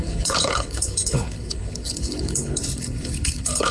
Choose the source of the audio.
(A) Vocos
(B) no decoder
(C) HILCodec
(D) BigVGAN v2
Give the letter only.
C